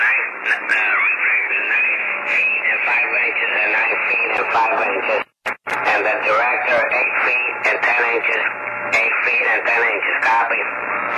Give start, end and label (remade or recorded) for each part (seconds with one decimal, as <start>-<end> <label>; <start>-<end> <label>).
0.0-1.4 recorded; 1.4-2.8 remade; 2.8-11.2 recorded